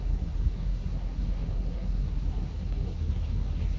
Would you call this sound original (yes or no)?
no